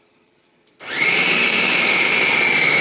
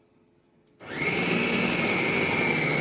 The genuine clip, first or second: second